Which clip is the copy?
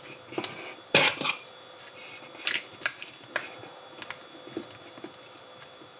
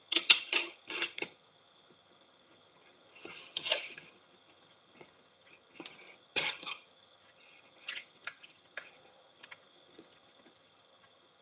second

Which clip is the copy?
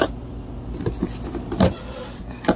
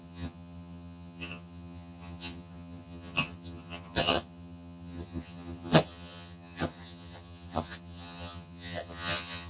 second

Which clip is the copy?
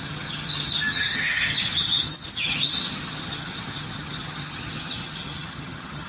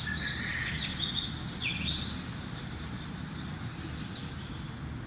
first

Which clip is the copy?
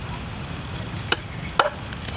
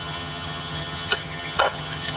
second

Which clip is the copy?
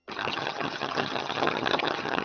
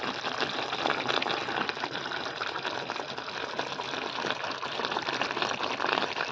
first